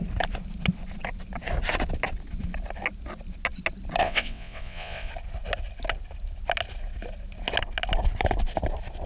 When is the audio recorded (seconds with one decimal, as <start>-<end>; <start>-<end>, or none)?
0.0-4.0; 5.1-9.1